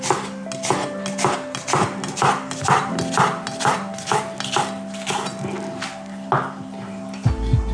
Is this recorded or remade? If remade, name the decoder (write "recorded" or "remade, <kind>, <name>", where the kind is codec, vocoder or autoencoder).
recorded